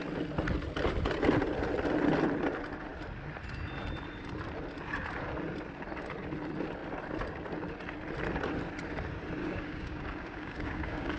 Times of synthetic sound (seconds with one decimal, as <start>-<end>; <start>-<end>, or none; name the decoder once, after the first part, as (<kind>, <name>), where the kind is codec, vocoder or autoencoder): 9.4-11.2 (codec, DAC)